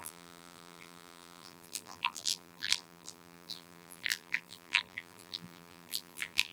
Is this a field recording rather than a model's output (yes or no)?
no